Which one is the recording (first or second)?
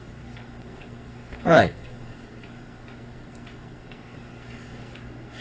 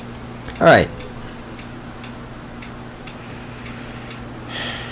second